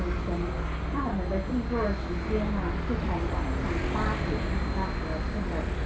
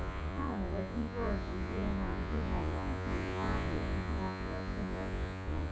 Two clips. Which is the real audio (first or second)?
first